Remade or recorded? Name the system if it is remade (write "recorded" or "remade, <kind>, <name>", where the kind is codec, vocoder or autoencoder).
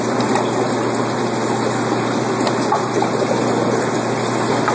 recorded